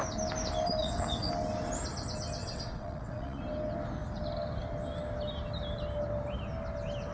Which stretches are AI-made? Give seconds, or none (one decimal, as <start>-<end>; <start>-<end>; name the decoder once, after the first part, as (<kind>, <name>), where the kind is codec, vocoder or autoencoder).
0.8-1.3 (vocoder, WaveNeXt); 2.4-3.4

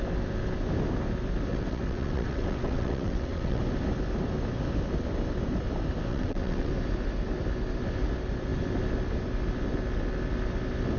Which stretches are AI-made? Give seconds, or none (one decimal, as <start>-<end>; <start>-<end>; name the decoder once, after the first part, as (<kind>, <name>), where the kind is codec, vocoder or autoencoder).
1.5-3.6 (vocoder, WaveNeXt); 6.1-6.7

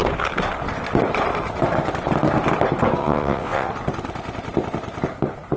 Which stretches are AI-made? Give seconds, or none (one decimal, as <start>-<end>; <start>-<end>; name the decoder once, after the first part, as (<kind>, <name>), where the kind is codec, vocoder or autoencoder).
3.0-3.7 (vocoder, WaveNeXt)

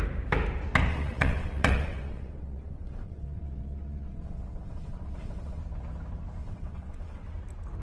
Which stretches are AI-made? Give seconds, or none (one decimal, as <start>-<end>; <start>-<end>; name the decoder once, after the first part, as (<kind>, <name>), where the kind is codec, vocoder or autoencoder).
0.9-5.6 (vocoder, WaveNeXt); 6.4-7.3

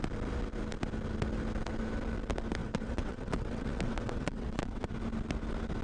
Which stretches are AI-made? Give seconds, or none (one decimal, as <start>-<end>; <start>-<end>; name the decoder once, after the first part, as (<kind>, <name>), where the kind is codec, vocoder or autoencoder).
2.6-4.9 (vocoder, WaveNeXt)

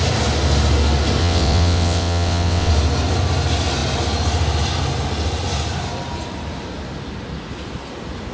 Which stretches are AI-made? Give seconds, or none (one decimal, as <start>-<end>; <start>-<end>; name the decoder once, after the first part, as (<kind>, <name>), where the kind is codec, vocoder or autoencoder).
1.2-2.7 (vocoder, WaveNeXt)